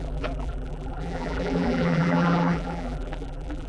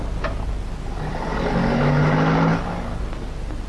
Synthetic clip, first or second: first